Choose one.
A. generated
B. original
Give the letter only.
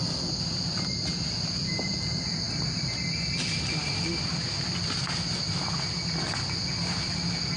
B